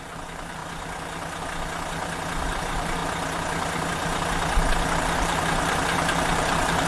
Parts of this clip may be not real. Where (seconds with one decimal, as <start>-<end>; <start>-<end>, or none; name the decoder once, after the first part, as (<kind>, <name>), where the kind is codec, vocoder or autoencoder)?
0.0-0.6 (vocoder, BigVGAN v2); 2.6-3.0; 4.9-6.9